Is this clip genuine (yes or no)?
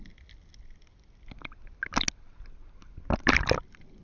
yes